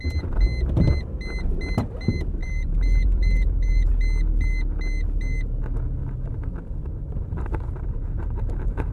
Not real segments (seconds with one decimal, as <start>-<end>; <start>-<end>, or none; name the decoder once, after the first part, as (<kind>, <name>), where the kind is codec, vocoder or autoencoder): 2.4-3.9 (vocoder, BigVGAN v2); 6.0-8.9